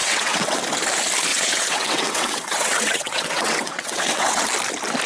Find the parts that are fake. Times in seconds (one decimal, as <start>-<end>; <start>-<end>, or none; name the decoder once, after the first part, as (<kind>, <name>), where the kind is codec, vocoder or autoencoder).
0.0-0.6 (vocoder, WaveNeXt); 1.3-4.4

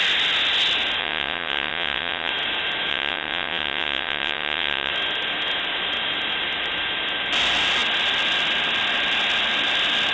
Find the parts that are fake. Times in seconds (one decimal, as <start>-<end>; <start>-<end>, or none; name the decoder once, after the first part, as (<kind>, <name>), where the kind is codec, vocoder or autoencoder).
1.0-2.3 (vocoder, WaveNeXt); 2.9-4.9

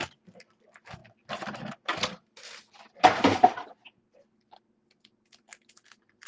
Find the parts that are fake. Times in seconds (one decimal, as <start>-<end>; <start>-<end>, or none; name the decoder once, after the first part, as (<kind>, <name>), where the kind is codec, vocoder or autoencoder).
none

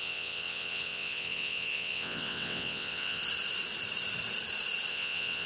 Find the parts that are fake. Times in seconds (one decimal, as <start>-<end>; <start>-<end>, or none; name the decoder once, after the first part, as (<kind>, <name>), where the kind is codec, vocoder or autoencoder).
0.0-3.2 (vocoder, WaveNeXt); 4.9-5.5

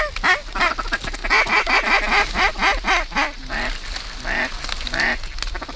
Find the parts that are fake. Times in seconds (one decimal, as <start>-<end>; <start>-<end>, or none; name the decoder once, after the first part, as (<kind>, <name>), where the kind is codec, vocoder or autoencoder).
none